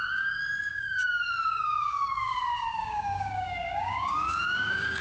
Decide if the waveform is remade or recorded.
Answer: remade